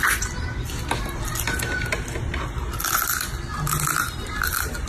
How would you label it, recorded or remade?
recorded